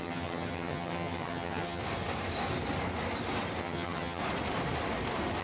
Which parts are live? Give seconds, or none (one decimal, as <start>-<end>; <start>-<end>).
1.8-3.6; 4.2-5.4